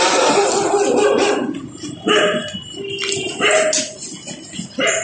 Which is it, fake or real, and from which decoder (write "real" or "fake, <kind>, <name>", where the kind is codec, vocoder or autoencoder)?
real